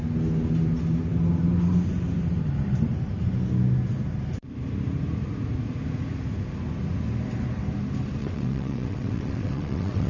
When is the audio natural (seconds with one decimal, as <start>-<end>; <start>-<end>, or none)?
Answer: 0.0-8.2